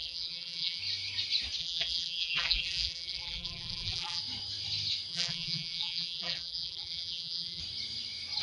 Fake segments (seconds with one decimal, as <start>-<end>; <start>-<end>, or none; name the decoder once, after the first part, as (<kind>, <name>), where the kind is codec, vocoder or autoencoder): 0.0-0.8 (vocoder, BigVGAN v2); 1.6-4.2; 5.1-7.6